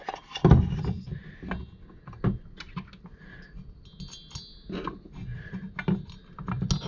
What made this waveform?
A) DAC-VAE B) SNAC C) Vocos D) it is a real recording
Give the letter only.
D